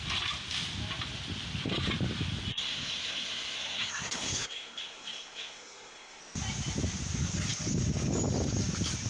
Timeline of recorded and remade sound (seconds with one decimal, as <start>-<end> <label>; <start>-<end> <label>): 0.0-2.5 recorded; 2.5-6.2 remade; 6.2-9.1 recorded